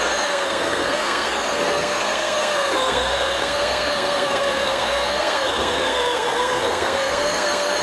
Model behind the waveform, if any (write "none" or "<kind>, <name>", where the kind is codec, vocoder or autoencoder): codec, SNAC